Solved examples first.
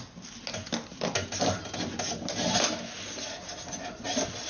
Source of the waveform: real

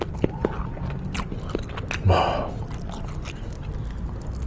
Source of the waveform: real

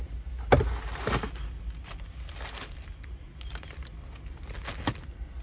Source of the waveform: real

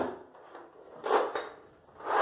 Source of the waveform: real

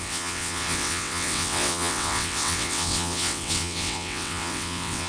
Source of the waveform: fake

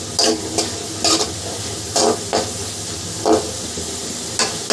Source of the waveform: real